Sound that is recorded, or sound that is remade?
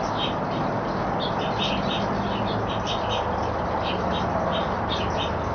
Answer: recorded